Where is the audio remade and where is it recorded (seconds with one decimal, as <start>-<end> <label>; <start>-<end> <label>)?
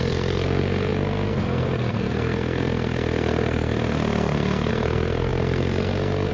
0.0-6.3 remade